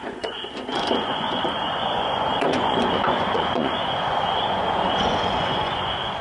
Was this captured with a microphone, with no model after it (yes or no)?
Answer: no